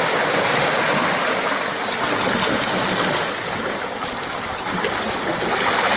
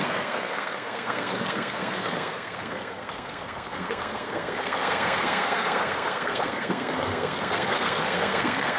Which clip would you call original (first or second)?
first